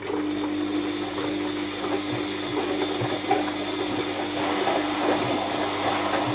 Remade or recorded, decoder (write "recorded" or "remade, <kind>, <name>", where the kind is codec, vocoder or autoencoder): recorded